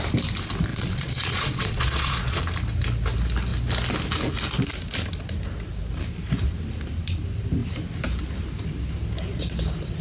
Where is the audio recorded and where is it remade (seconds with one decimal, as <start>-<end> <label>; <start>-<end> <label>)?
0.0-0.7 recorded; 0.7-2.4 remade; 2.4-10.0 recorded